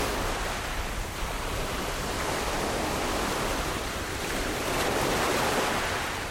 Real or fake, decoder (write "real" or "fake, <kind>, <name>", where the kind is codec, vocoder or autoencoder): fake, vocoder, BigVGAN v2